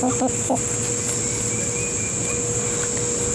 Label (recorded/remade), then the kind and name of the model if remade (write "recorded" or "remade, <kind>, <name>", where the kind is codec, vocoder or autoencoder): recorded